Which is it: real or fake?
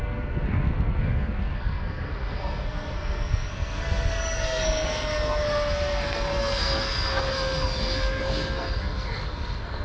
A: fake